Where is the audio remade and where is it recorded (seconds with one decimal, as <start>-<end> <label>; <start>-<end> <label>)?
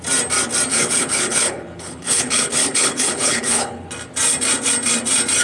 0.0-0.7 recorded; 0.7-3.9 remade; 3.9-5.4 recorded